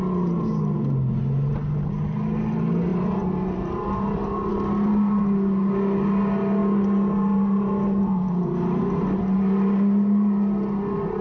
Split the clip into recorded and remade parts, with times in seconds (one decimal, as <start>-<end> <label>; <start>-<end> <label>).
0.0-11.2 recorded